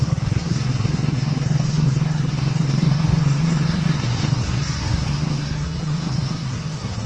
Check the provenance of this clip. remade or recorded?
remade